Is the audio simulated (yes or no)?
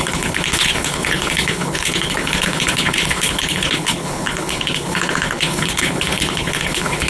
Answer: yes